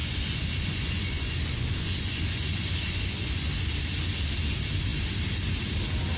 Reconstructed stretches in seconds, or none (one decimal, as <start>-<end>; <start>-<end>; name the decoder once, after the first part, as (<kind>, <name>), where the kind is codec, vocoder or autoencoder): 0.0-3.7 (vocoder, Vocos)